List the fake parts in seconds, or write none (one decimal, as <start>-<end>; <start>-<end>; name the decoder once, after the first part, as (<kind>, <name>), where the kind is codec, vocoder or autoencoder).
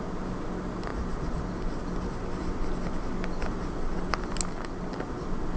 none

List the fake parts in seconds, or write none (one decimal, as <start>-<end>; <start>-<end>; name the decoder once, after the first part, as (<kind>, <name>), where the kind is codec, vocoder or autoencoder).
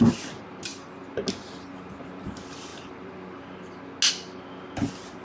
none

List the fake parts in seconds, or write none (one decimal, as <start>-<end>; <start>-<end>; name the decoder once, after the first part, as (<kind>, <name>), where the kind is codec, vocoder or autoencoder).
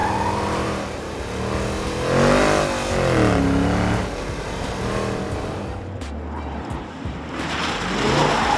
0.0-1.2 (vocoder, BigVGAN v2); 4.0-4.7; 5.8-7.6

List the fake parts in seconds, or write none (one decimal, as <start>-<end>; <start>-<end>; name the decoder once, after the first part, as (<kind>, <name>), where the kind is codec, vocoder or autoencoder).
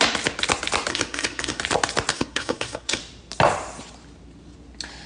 0.9-1.6 (codec, SNAC); 2.1-3.0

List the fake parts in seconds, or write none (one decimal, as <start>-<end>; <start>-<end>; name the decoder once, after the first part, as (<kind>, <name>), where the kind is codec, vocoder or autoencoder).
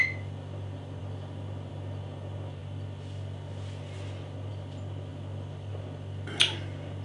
none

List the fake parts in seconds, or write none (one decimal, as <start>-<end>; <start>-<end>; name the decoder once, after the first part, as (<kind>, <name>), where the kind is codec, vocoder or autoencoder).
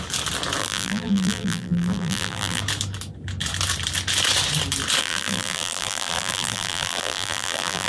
0.6-2.6 (vocoder, BigVGAN v2); 5.0-7.9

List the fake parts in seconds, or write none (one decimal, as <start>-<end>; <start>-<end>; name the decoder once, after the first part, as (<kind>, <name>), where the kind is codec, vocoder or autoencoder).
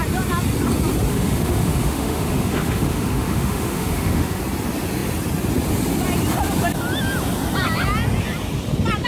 1.1-4.4 (autoencoder, DAC-VAE)